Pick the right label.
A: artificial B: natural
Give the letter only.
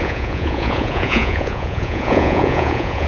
A